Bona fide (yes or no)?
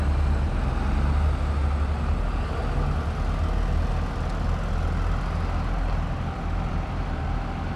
yes